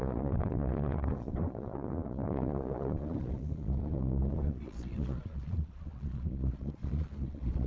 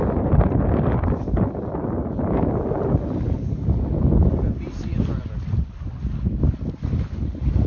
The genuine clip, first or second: second